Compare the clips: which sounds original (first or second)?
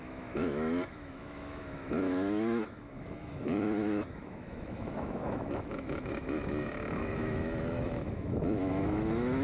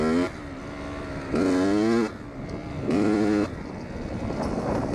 second